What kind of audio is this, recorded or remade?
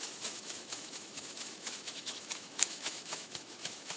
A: remade